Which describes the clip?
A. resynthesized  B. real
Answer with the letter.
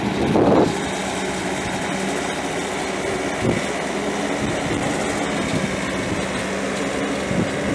B